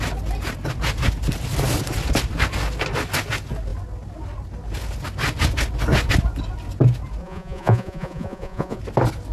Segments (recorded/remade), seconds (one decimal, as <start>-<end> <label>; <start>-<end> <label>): 0.0-7.2 recorded; 7.2-8.8 remade; 8.8-9.3 recorded